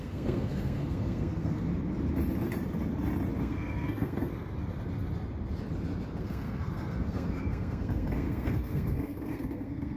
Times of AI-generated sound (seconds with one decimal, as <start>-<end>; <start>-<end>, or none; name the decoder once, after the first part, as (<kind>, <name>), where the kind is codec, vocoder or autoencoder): 0.0-1.7 (codec, SNAC); 3.4-4.3; 6.2-10.0